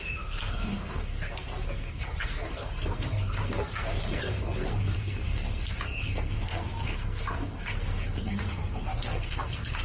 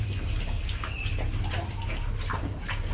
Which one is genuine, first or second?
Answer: second